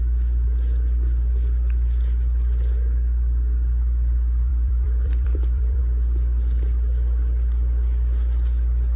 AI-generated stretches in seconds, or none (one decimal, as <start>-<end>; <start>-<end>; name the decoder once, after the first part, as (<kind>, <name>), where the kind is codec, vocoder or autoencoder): 4.5-5.8 (vocoder, BigVGAN v2)